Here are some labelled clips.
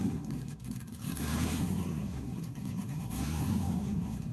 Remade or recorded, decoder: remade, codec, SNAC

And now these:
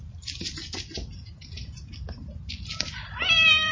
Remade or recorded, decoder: remade, vocoder, BigVGAN v2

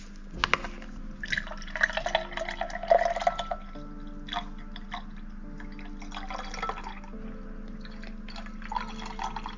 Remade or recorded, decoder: recorded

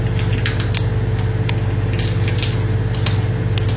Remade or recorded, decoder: recorded